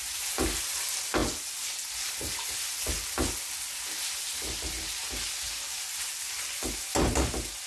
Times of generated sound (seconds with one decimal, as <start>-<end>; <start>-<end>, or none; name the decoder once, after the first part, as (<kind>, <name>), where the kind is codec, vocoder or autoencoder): none